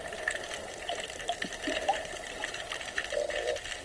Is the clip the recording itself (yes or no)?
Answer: yes